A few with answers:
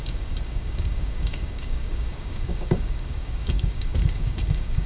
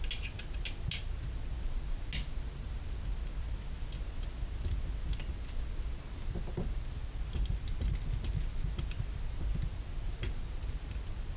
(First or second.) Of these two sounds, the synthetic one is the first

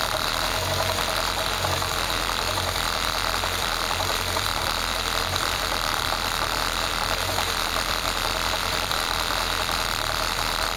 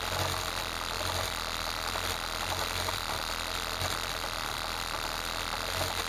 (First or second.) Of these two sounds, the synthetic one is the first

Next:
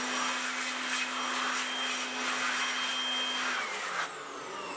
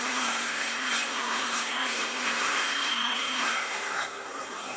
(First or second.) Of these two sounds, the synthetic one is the second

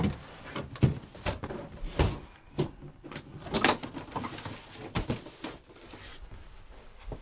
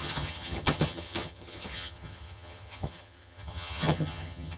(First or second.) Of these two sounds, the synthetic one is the second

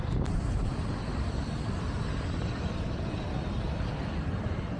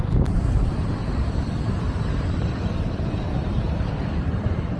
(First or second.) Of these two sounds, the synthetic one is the second